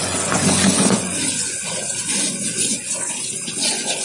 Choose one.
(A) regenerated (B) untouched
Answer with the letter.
A